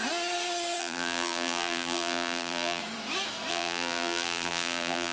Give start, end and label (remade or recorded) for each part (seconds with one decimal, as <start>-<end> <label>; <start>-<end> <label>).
0.0-0.8 recorded; 0.8-2.8 remade; 2.8-3.5 recorded; 3.5-5.1 remade